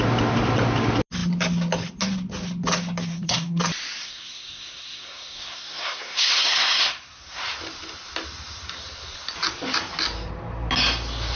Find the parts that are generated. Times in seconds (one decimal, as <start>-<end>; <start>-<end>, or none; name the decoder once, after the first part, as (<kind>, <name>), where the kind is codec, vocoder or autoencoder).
3.1-3.6 (codec, SNAC); 4.0-7.4